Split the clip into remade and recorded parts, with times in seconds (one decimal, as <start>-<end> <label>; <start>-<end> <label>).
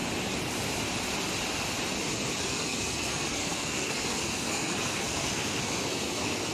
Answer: 0.0-2.4 recorded; 2.4-6.5 remade